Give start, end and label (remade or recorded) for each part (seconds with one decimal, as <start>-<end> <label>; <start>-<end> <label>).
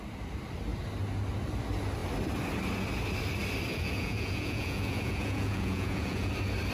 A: 0.0-3.7 recorded; 3.7-6.3 remade; 6.3-6.7 recorded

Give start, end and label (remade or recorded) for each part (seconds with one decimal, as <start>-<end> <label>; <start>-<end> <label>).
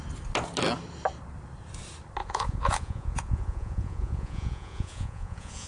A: 0.0-2.2 recorded; 2.2-5.7 remade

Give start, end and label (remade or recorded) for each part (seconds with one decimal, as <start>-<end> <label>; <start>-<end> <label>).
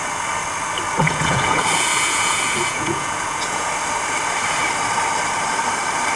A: 0.0-1.0 recorded; 1.0-3.7 remade; 3.7-6.2 recorded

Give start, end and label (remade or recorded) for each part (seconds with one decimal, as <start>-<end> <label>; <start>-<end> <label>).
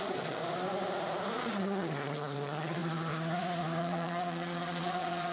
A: 0.0-0.4 remade; 0.4-1.4 recorded; 1.4-2.8 remade; 2.8-3.8 recorded; 3.8-5.3 remade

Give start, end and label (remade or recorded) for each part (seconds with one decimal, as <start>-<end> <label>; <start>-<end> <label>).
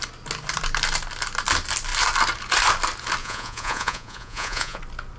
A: 0.0-3.2 recorded; 3.2-4.8 remade; 4.8-5.2 recorded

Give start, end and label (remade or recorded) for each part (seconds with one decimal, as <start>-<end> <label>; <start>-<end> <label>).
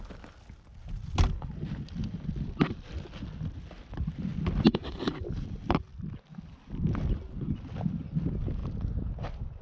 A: 0.0-9.6 recorded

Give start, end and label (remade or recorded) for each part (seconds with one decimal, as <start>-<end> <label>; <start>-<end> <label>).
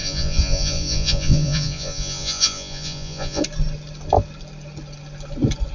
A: 0.0-3.4 remade; 3.4-5.7 recorded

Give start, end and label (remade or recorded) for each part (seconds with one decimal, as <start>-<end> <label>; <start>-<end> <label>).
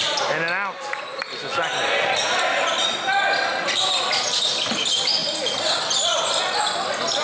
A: 0.0-7.2 recorded